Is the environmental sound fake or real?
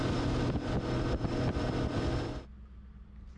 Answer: real